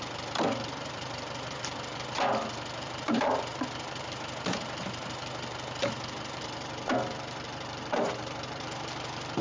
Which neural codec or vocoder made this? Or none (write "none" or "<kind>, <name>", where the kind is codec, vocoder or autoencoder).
vocoder, BigVGAN v2